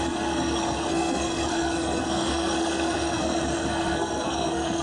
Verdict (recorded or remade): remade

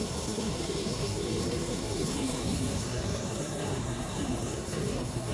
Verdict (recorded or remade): remade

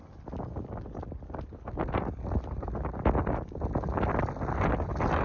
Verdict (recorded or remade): recorded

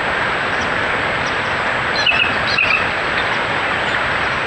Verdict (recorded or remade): recorded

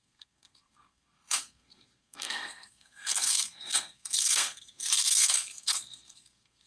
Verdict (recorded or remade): remade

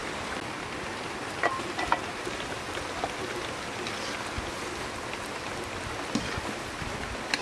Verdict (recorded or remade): recorded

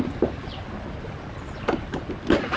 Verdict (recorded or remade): recorded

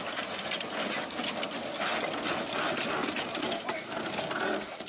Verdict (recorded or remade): recorded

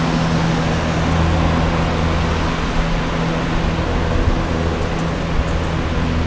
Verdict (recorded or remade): recorded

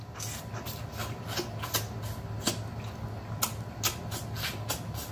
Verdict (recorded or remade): recorded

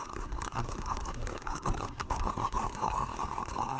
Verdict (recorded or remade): remade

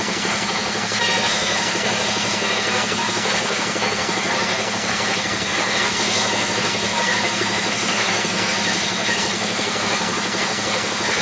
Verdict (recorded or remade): remade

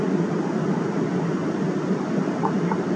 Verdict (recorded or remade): recorded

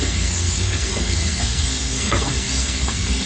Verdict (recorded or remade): remade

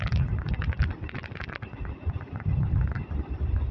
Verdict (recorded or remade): recorded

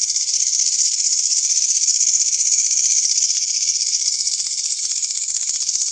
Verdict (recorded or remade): remade